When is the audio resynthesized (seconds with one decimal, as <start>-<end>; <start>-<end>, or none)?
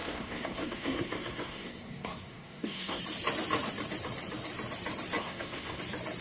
0.0-3.0; 5.2-5.8